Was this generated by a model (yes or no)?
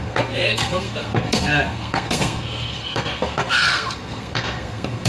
yes